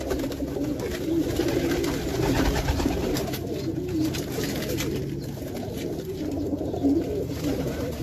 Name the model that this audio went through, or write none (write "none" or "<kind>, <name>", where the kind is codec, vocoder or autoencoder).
none